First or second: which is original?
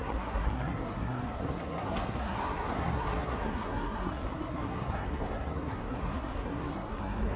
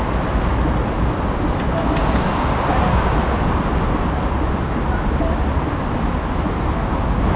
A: second